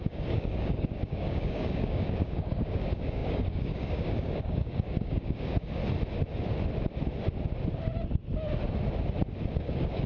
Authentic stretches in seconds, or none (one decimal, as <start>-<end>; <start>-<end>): 5.8-9.6